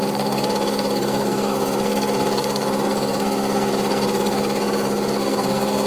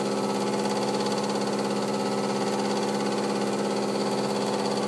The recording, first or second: second